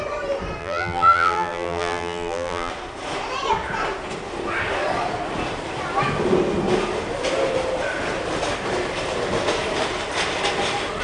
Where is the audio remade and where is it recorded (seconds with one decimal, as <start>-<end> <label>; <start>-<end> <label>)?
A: 0.0-0.6 recorded; 0.6-2.7 remade; 2.7-11.0 recorded